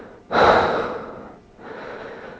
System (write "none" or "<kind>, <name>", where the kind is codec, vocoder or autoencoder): none